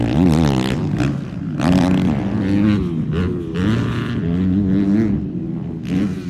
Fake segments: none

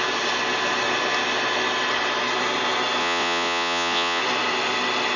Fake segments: 3.0-4.2

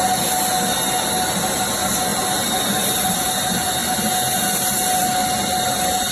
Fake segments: none

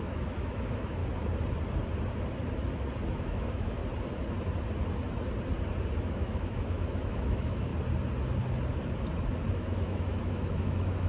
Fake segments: 0.0-1.0; 3.2-3.8; 6.0-7.7; 9.5-11.1

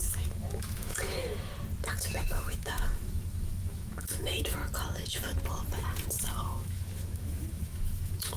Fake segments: 0.0-1.5; 2.0-4.6; 6.2-8.4

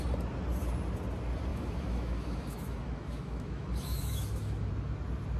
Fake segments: 1.5-4.7